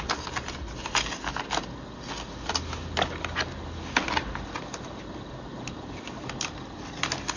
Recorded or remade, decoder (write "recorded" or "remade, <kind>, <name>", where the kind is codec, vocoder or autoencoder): recorded